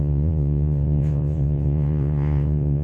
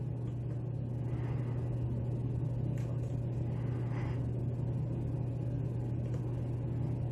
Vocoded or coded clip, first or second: first